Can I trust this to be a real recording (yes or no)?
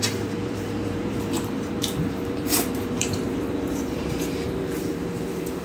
no